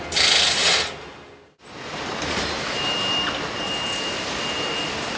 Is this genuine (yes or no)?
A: yes